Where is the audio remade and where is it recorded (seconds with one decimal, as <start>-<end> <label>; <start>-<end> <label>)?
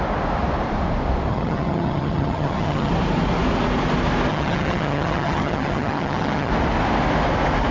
0.0-1.3 recorded; 1.3-2.9 remade; 2.9-4.3 recorded; 4.3-6.5 remade; 6.5-7.7 recorded